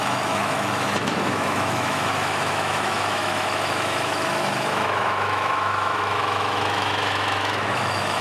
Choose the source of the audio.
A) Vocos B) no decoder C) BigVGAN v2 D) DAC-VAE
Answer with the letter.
D